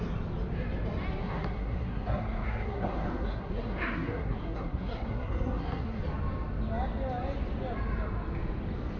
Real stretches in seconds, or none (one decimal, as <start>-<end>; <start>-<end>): 0.0-1.2; 6.0-9.0